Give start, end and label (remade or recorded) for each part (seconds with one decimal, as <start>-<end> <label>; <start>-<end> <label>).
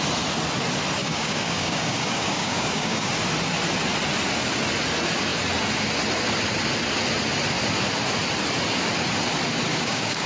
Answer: 0.0-1.0 recorded; 1.0-3.1 remade; 3.1-9.7 recorded; 9.7-10.3 remade